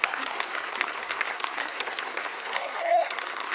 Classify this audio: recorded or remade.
remade